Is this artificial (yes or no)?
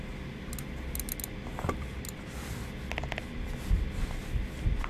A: no